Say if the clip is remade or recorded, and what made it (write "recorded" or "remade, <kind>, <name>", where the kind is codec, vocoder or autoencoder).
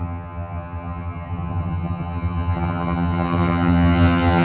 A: remade, vocoder, HiFi-GAN